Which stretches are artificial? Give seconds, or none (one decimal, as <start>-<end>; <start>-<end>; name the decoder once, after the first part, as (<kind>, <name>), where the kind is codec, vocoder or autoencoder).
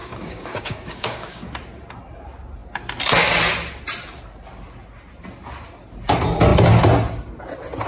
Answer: 0.0-1.4 (codec, DAC)